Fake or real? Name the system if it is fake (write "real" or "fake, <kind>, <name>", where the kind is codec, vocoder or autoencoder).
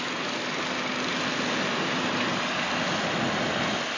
real